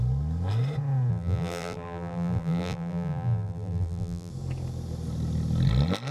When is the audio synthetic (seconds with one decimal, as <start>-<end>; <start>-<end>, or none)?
1.1-4.3